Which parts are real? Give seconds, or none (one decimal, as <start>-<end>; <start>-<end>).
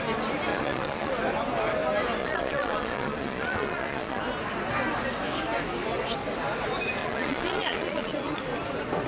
0.0-0.5; 1.1-2.2; 4.2-7.0; 8.4-9.1